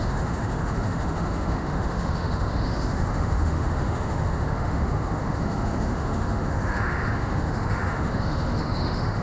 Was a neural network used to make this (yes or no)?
yes